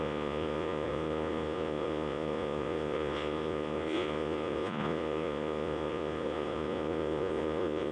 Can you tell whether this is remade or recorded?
remade